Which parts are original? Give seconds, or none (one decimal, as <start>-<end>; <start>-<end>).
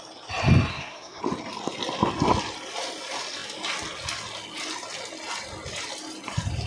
0.0-0.7; 1.2-6.7